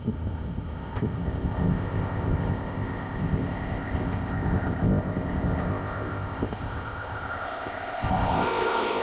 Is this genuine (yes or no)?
no